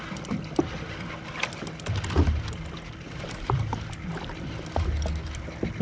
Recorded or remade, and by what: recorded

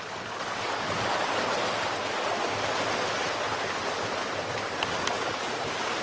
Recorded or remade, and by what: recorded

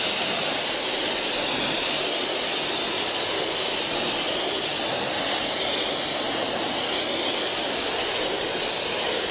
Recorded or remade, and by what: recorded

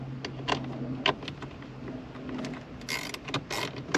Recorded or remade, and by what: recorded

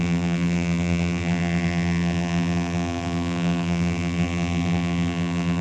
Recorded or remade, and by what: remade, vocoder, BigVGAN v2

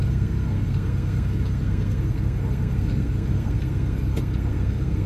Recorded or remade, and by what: remade, codec, SNAC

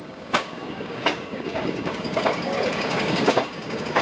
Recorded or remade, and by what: remade, codec, DAC